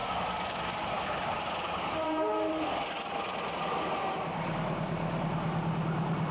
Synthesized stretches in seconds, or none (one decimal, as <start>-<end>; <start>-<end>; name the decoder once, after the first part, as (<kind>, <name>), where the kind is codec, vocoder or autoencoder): none